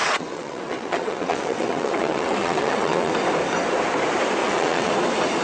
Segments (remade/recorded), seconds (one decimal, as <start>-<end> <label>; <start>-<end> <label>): 0.0-3.1 remade; 3.1-4.4 recorded; 4.4-4.9 remade; 4.9-5.4 recorded